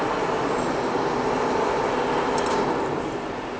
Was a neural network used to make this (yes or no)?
no